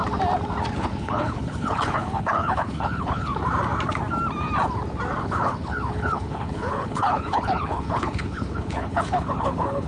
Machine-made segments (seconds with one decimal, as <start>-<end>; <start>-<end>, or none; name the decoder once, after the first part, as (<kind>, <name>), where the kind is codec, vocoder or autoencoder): 0.8-3.3 (codec, HILCodec); 5.2-9.9